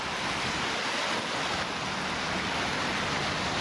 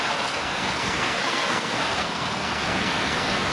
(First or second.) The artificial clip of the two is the second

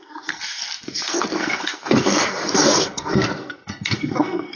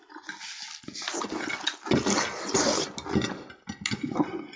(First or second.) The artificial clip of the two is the first